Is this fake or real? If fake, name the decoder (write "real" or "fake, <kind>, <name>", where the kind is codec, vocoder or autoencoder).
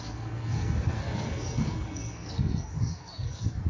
fake, codec, SNAC